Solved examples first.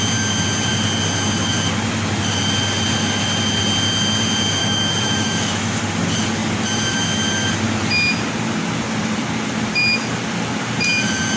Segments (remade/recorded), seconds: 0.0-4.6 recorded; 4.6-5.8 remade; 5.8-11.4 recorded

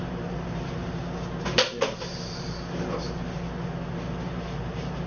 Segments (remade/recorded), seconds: 0.0-1.0 remade; 1.0-4.1 recorded; 4.1-5.1 remade

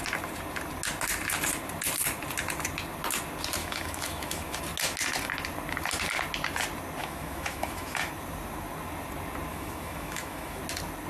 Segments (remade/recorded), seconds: 0.0-3.6 recorded; 3.6-4.6 remade; 4.6-7.0 recorded; 7.0-8.1 remade; 8.1-9.5 recorded; 9.5-10.6 remade; 10.6-11.1 recorded

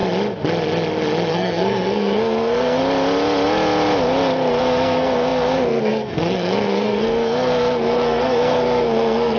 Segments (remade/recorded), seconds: 0.0-1.3 recorded; 1.3-2.8 remade; 2.8-4.6 recorded; 4.6-9.4 remade